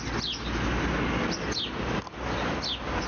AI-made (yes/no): no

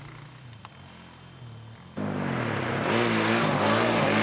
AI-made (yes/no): no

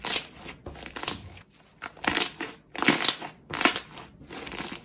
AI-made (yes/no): no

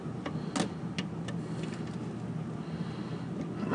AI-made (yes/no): no